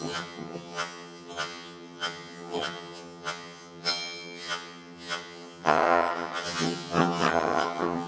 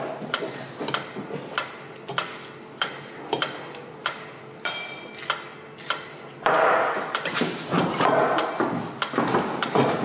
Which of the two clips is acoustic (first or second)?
second